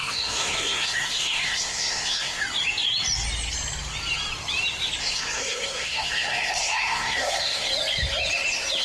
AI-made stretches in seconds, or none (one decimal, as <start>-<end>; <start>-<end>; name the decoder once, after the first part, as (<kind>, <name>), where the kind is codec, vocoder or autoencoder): 0.0-2.4 (codec, SNAC); 5.0-7.7